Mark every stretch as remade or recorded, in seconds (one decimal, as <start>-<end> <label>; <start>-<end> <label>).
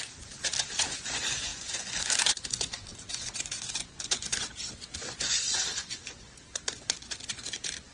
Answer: 0.0-0.5 remade; 0.5-1.0 recorded; 1.0-7.9 remade